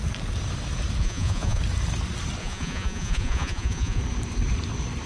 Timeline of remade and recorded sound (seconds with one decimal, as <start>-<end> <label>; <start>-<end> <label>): 0.0-1.0 recorded; 1.0-1.6 remade; 1.6-2.4 recorded; 2.4-4.0 remade; 4.0-5.1 recorded